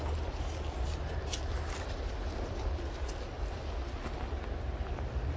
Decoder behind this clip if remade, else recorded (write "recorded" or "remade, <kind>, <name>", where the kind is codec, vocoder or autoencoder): recorded